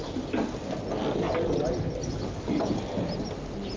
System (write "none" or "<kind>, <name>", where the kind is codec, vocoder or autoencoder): none